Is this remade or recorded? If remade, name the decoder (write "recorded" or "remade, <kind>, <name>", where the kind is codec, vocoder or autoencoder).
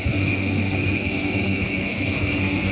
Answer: remade, codec, SNAC